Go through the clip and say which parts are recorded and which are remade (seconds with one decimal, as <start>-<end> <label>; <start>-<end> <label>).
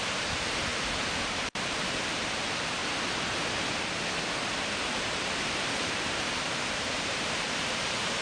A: 0.0-2.8 remade; 2.8-4.4 recorded; 4.4-8.2 remade